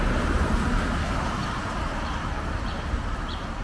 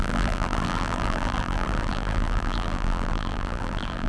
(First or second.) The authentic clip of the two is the first